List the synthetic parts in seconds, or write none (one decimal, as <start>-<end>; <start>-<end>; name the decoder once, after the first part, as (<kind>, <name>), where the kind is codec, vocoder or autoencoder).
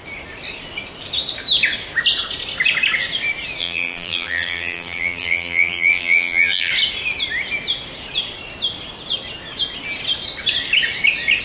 3.6-6.7 (vocoder, BigVGAN v2)